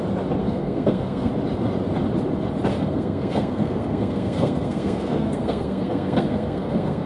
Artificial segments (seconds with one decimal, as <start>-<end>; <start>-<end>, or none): 0.4-1.3; 2.7-7.1